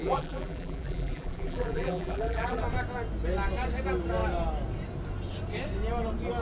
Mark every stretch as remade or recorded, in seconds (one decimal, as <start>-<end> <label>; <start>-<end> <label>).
0.0-2.6 remade; 2.6-6.4 recorded